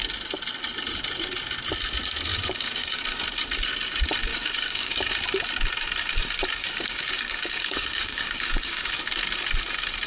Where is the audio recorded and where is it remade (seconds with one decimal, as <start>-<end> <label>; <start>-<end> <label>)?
0.0-2.3 recorded; 2.3-3.0 remade; 3.0-4.3 recorded; 4.3-5.1 remade; 5.1-6.6 recorded; 6.6-9.0 remade; 9.0-10.1 recorded